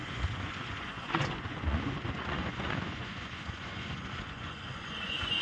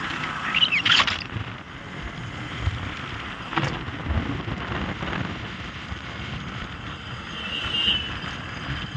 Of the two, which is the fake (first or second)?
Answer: first